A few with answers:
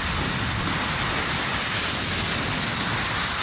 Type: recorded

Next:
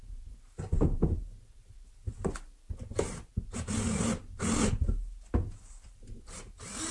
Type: recorded